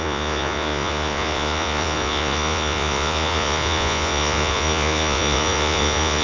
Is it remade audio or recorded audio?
remade